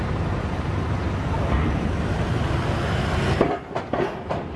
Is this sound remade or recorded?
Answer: recorded